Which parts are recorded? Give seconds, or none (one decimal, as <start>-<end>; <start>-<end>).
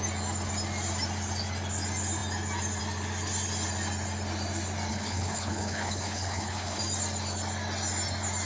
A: 0.0-4.9; 6.8-8.5